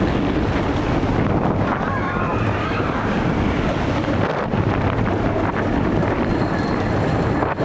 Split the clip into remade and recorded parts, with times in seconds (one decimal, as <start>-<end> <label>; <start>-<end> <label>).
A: 0.0-7.6 recorded